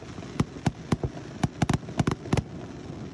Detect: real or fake real